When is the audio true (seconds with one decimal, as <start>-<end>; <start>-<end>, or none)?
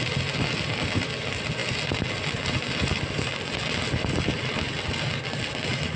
0.0-6.0